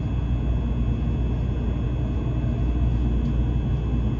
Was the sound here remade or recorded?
recorded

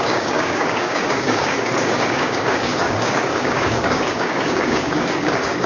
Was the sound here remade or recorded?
remade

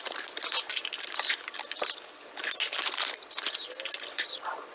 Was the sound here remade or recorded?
recorded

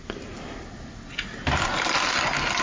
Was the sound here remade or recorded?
recorded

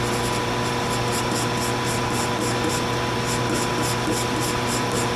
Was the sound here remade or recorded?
recorded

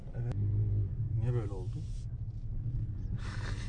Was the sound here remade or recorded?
recorded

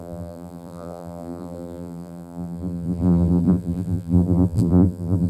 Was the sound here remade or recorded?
remade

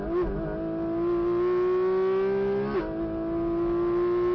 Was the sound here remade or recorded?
recorded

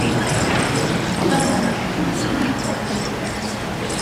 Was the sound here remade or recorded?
recorded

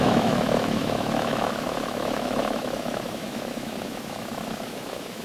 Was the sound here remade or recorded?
remade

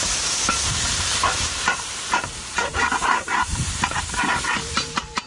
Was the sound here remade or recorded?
remade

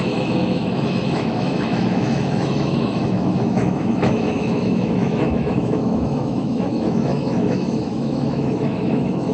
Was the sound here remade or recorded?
remade